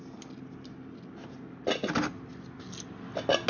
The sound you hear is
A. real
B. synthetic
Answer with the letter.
A